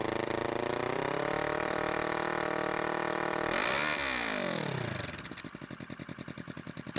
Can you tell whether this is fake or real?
real